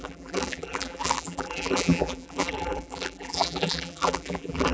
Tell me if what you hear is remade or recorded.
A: remade